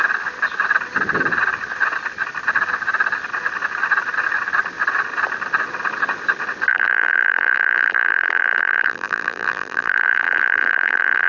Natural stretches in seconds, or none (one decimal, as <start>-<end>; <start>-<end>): 0.0-6.7